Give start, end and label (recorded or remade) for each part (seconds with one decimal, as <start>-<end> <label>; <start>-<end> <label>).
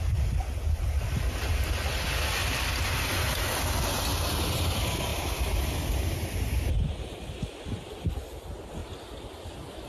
0.0-2.4 recorded; 2.4-3.6 remade; 3.6-8.8 recorded; 8.8-9.5 remade; 9.5-9.9 recorded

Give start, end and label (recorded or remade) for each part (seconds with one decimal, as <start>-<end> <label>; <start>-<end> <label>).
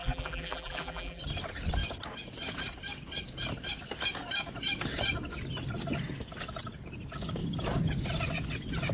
0.0-1.2 remade; 1.2-8.9 recorded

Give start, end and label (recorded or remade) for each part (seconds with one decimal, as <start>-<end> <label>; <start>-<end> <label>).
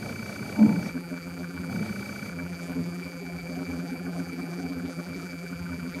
0.0-0.9 recorded; 0.9-1.7 remade; 1.7-2.3 recorded; 2.3-6.0 remade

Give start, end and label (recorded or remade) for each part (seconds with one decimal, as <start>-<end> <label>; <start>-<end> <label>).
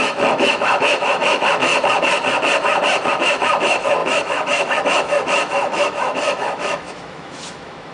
0.0-1.7 remade; 1.7-3.1 recorded; 3.1-7.9 remade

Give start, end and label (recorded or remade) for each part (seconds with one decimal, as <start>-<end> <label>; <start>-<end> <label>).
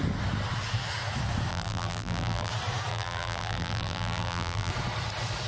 0.0-1.5 recorded; 1.5-2.5 remade; 2.5-2.9 recorded; 2.9-4.7 remade; 4.7-5.5 recorded